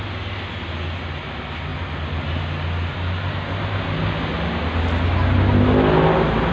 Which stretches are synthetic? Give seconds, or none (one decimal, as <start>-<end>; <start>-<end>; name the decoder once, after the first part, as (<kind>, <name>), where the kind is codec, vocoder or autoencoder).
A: none